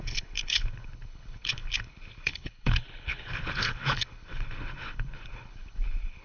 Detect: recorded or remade remade